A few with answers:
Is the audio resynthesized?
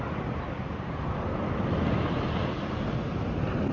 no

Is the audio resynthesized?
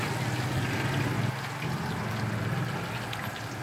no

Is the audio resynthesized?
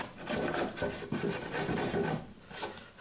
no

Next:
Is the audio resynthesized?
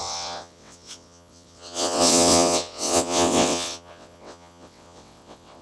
yes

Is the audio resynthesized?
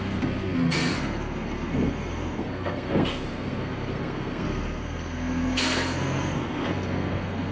yes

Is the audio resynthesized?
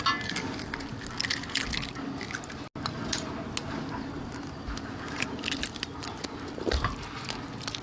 no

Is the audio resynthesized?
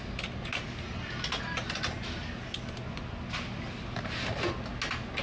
no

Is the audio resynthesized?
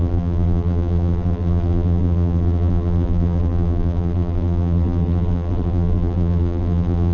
yes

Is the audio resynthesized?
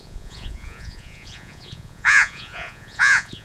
yes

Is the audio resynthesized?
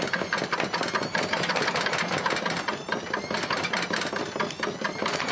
no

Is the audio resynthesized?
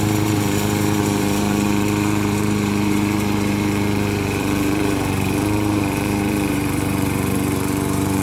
yes